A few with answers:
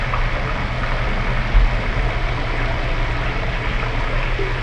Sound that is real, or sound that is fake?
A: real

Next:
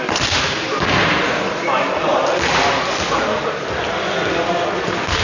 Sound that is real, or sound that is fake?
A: real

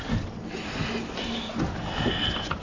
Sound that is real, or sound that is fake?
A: real